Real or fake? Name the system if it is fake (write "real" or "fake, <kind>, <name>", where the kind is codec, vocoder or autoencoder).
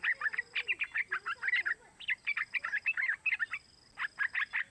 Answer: real